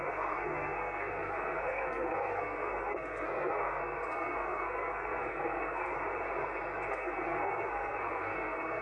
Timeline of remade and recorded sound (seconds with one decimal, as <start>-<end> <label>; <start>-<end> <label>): 0.0-5.9 remade; 5.9-6.9 recorded; 6.9-8.8 remade